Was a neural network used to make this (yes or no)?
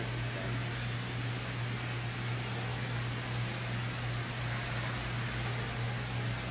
no